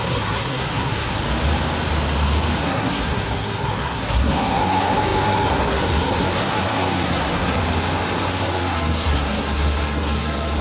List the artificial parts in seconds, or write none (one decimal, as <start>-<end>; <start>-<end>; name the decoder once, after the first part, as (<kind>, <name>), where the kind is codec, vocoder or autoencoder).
0.0-1.2 (codec, SNAC); 2.6-7.6; 8.3-10.6